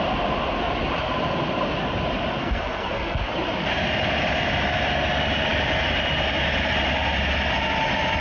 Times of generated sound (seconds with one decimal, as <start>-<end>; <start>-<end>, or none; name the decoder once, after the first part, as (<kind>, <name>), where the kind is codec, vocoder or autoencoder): 2.4-3.3 (codec, SNAC)